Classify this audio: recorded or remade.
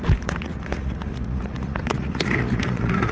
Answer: remade